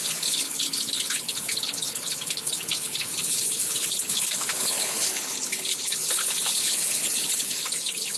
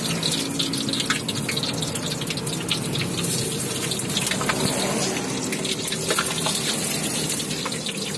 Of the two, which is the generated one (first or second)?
first